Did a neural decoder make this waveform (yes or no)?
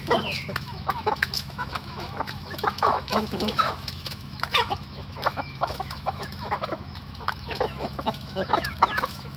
yes